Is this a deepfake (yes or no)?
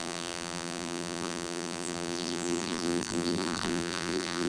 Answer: yes